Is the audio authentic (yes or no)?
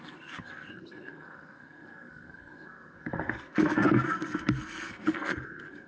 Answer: no